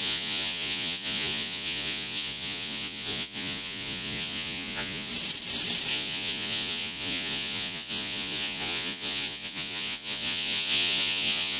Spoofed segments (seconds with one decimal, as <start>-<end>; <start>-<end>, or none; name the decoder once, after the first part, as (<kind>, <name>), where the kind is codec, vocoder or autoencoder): 0.0-5.1 (vocoder, Vocos); 5.9-11.6